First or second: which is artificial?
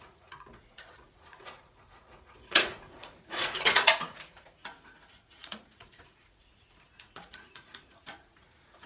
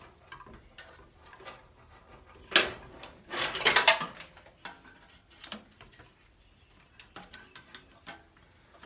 first